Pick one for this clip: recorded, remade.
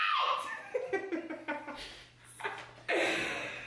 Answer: recorded